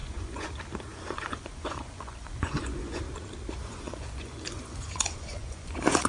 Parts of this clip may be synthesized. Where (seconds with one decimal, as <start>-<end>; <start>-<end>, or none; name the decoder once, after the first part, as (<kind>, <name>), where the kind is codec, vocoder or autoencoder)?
0.0-0.5 (vocoder, Vocos); 0.9-3.0; 3.6-6.1